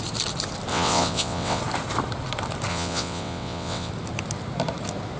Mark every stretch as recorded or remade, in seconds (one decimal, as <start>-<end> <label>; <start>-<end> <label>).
0.0-0.7 recorded; 0.7-1.6 remade; 1.6-2.7 recorded; 2.7-3.9 remade; 3.9-5.2 recorded